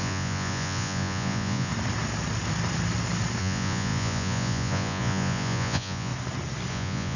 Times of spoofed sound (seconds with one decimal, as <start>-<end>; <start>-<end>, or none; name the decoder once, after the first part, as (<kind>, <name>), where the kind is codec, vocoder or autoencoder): 0.0-1.7 (vocoder, Vocos); 3.4-6.1; 6.7-7.2